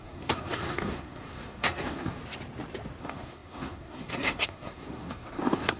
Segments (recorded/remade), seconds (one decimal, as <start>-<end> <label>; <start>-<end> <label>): 0.0-2.2 remade; 2.2-3.0 recorded; 3.0-5.8 remade